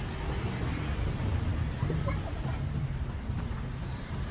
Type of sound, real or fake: real